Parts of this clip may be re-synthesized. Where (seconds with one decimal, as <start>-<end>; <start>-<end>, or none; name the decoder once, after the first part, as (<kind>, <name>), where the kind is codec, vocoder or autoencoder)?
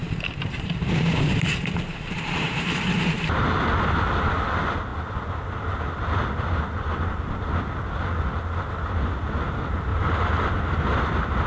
0.0-3.0 (vocoder, BigVGAN v2); 9.9-10.5